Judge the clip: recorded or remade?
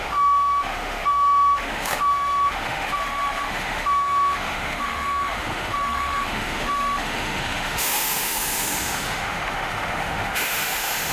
remade